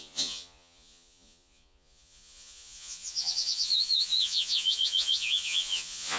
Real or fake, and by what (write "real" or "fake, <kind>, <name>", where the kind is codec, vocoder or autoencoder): fake, vocoder, Vocos